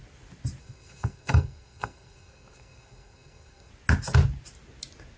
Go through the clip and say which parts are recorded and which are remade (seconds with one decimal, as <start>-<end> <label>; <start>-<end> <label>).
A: 0.0-0.6 recorded; 0.6-3.7 remade; 3.7-5.2 recorded